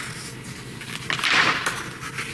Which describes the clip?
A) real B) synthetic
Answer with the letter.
A